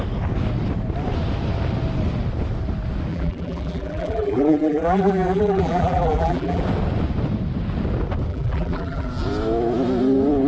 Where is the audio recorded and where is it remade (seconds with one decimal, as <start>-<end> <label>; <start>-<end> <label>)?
0.0-3.1 recorded; 3.1-6.6 remade; 6.6-8.3 recorded; 8.3-9.1 remade; 9.1-10.5 recorded